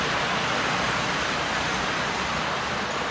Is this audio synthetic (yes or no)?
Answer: no